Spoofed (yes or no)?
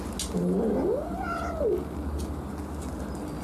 no